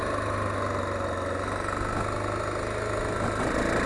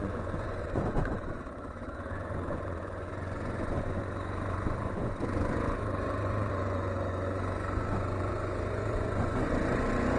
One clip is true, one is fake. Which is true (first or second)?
first